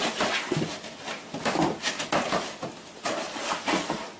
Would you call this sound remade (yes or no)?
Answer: no